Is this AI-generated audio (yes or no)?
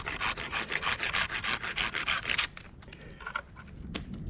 no